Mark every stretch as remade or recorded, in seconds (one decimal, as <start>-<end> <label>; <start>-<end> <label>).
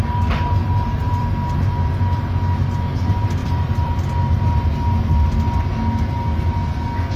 0.0-0.6 recorded; 0.6-2.0 remade; 2.0-3.4 recorded; 3.4-3.9 remade; 3.9-7.2 recorded